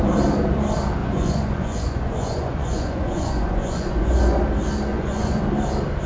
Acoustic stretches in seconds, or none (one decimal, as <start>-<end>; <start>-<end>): 0.0-1.0; 4.2-4.9; 5.4-6.1